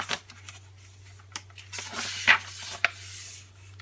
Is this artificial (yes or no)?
no